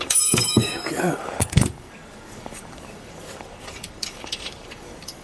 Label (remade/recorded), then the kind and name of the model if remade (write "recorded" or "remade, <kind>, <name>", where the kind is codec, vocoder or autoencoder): remade, codec, DAC